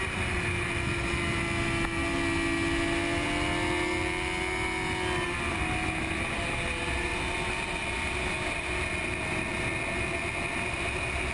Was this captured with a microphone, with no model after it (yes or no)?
yes